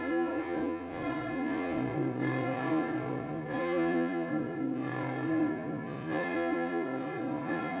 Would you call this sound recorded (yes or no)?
no